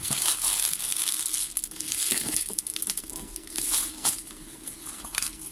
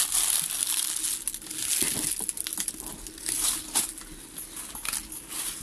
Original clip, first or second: second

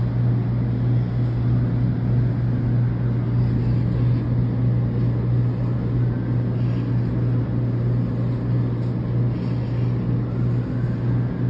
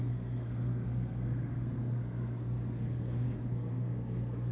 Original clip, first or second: first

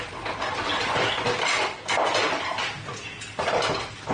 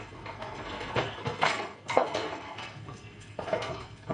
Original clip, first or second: first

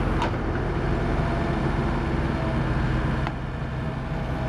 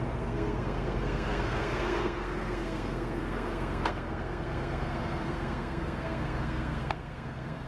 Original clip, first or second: first